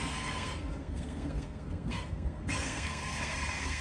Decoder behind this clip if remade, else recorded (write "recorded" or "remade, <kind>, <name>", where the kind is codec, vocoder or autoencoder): remade, codec, SNAC